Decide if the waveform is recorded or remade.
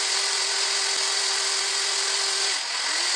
recorded